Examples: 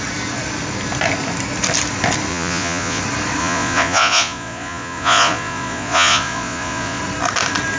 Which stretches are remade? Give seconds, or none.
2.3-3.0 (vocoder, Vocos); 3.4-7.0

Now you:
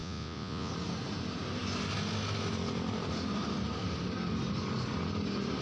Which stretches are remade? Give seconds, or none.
0.0-0.7 (vocoder, Vocos)

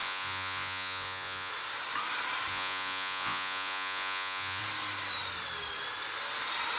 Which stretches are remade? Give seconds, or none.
0.0-1.5 (vocoder, Vocos); 2.5-4.6

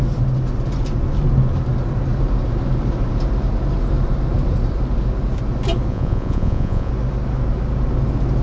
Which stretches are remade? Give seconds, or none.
5.9-6.9 (vocoder, Vocos)

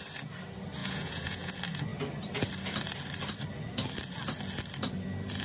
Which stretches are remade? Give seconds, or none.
0.8-1.5 (vocoder, Vocos)

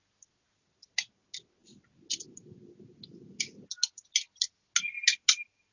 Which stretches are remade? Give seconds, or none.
none

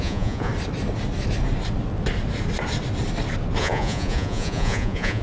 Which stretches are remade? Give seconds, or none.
0.0-0.5 (vocoder, Vocos); 3.6-5.2

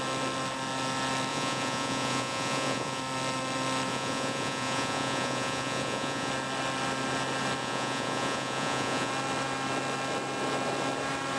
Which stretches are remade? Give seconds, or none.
1.3-3.0 (vocoder, Vocos); 3.9-6.3; 7.6-9.1